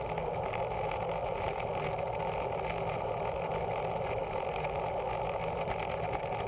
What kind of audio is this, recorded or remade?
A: recorded